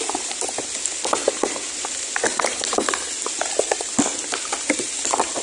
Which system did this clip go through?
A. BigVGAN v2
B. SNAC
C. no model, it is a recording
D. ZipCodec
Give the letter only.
C